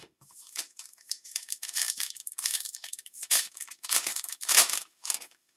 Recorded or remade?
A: remade